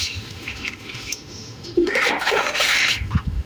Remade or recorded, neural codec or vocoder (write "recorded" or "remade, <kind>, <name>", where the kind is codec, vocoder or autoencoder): remade, autoencoder, DAC-VAE